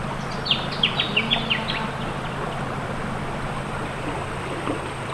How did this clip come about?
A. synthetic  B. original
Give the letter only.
B